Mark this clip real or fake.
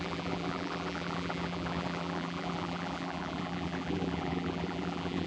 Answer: fake